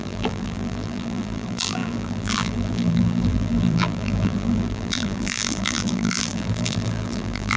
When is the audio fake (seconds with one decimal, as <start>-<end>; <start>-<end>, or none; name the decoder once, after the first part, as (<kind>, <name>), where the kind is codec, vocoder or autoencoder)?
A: 0.0-7.6 (vocoder, BigVGAN v2)